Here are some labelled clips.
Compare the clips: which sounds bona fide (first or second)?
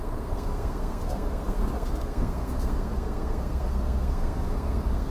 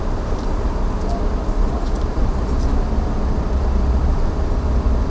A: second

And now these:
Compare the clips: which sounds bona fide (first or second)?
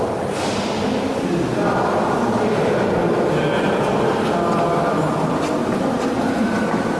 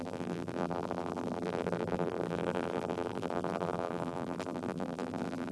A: first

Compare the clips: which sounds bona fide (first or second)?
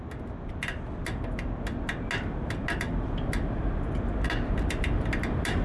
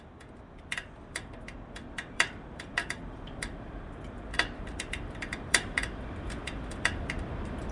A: first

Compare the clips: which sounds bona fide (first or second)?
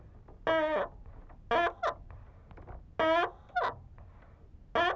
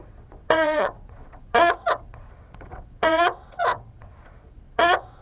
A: first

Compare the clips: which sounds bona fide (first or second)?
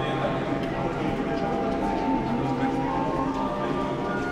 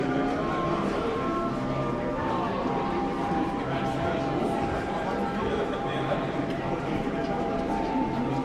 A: first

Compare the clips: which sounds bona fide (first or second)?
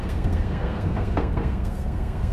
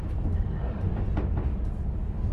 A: second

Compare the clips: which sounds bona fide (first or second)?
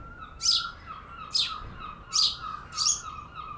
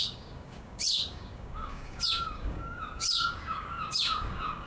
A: first